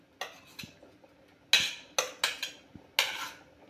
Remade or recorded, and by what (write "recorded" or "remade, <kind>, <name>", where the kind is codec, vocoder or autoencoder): recorded